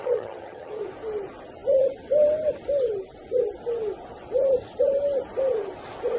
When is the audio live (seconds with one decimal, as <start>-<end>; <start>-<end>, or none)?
0.7-6.2